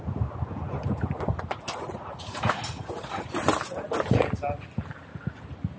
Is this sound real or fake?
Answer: real